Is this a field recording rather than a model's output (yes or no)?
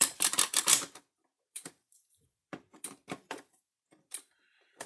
no